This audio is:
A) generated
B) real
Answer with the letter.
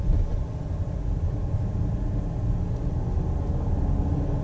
B